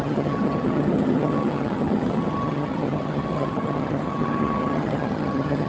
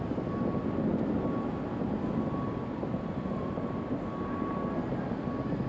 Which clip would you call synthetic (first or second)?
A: first